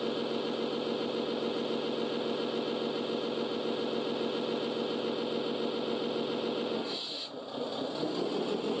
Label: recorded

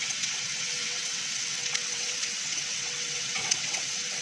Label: remade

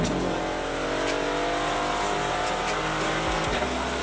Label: recorded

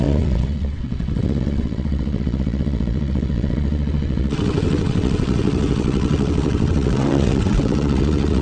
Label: remade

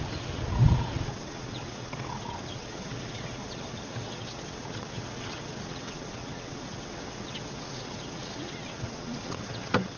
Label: remade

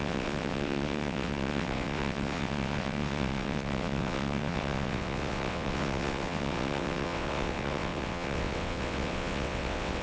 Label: remade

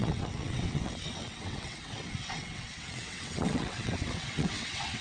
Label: remade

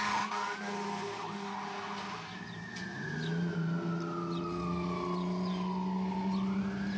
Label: recorded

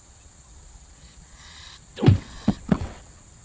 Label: remade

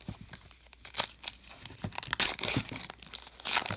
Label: recorded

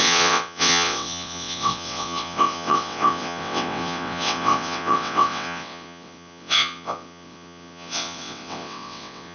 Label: remade